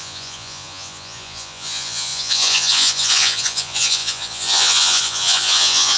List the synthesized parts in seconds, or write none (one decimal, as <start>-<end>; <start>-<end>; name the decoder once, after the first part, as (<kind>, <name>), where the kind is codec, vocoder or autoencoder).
0.0-6.0 (vocoder, Vocos)